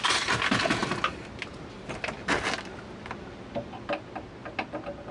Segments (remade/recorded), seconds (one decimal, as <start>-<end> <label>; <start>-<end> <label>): 0.0-5.1 recorded